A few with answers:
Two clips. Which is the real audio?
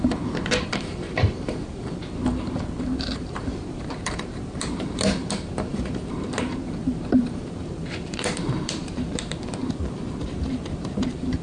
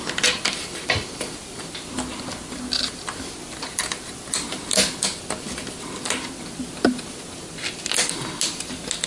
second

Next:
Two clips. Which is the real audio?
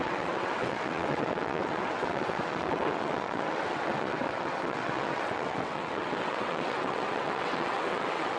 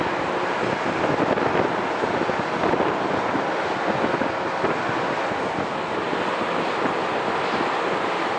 second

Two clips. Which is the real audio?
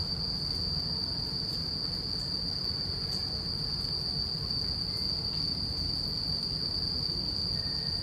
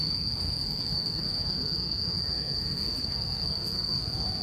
first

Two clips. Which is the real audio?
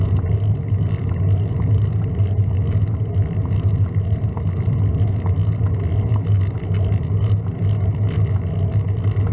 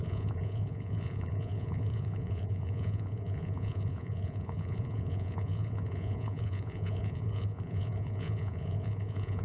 first